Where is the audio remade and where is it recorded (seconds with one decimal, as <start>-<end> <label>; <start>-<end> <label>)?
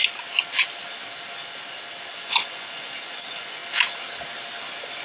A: 0.0-2.0 recorded; 2.0-3.6 remade; 3.6-5.0 recorded